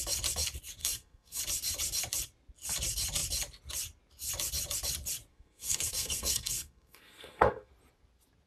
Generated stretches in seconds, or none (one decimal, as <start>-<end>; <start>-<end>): 0.8-1.4; 5.3-7.7

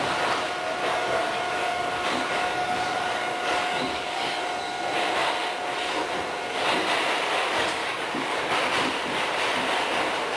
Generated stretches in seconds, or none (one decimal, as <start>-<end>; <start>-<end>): 0.8-4.4; 7.8-8.5

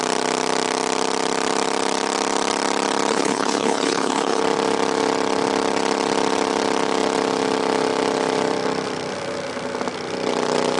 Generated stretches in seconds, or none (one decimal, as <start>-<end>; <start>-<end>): 3.1-4.4

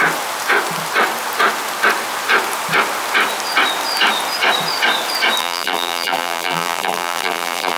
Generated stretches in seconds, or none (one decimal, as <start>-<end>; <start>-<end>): 5.4-7.8

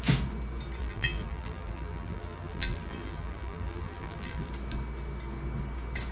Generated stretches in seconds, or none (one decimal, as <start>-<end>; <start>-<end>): 0.8-4.5

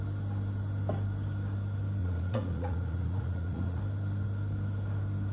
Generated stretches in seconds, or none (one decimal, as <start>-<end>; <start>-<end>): 2.0-3.8